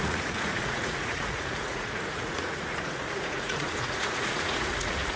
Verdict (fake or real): fake